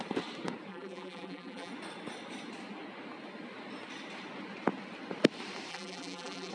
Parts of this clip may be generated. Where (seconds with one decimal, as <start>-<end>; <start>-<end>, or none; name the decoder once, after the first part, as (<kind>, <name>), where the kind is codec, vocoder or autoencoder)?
0.7-1.7 (vocoder, BigVGAN v2); 5.7-6.5